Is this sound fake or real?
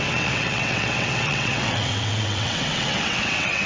fake